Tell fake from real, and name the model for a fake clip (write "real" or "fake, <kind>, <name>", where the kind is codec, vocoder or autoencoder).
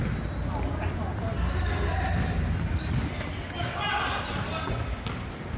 real